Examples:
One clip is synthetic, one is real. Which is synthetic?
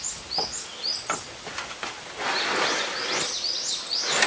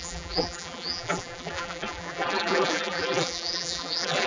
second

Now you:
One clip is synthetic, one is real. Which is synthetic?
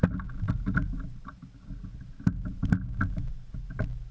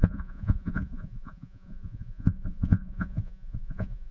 second